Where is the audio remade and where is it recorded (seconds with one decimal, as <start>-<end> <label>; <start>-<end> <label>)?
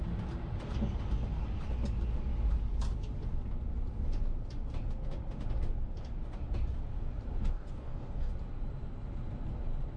0.0-7.4 recorded; 7.4-8.3 remade; 8.3-10.0 recorded